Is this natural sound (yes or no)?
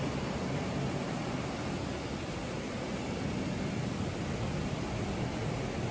yes